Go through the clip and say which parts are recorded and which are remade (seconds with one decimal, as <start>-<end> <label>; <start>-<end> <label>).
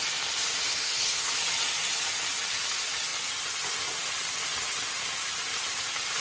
0.0-0.7 recorded; 0.7-1.3 remade; 1.3-6.2 recorded